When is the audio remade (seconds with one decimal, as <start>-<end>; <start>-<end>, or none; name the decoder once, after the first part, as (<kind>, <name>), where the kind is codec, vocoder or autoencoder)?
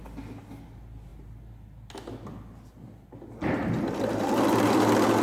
none